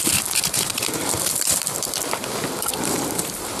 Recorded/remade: remade